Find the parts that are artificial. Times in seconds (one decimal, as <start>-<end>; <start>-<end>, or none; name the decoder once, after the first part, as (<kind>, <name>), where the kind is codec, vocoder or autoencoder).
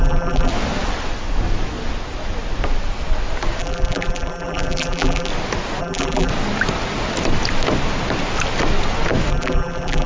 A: 0.0-0.5 (vocoder, BigVGAN v2); 3.6-5.3; 5.8-6.3; 9.3-10.1